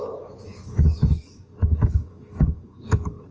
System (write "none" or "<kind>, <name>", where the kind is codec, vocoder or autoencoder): autoencoder, DAC-VAE